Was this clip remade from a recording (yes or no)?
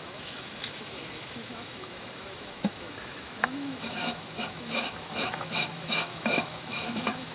yes